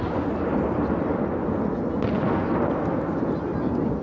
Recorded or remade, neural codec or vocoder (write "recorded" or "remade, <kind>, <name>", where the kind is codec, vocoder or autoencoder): recorded